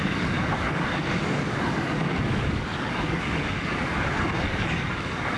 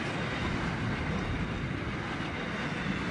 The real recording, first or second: second